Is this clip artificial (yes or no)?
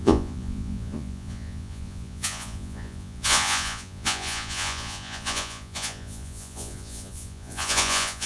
yes